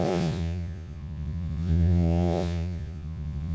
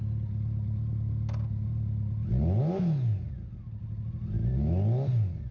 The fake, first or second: first